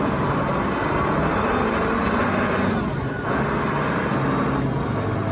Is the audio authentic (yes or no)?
yes